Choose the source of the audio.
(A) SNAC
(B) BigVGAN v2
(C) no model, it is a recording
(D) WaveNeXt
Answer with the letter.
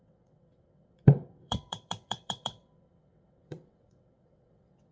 D